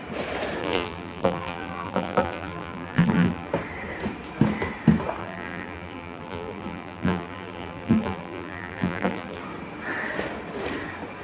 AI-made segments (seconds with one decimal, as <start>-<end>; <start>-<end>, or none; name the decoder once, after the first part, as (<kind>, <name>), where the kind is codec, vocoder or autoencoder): 0.6-3.5 (vocoder, BigVGAN v2); 5.2-9.4